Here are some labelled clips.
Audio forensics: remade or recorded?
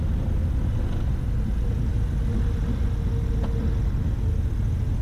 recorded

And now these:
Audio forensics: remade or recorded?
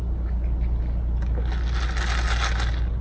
recorded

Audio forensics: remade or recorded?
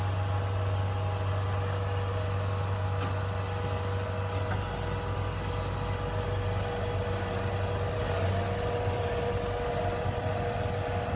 recorded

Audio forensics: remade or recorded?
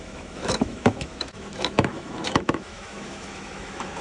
remade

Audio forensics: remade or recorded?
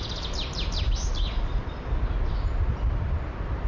recorded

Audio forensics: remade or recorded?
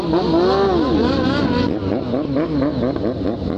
recorded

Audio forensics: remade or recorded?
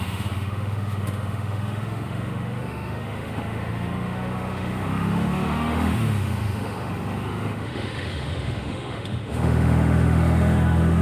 remade